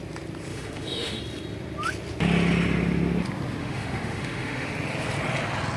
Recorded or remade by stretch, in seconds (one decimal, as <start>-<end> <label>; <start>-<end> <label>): 0.0-0.5 recorded; 0.5-1.2 remade; 1.2-3.6 recorded; 3.6-4.7 remade; 4.7-5.8 recorded